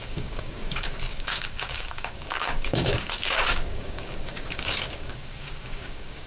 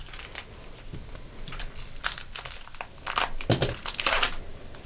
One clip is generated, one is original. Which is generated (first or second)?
first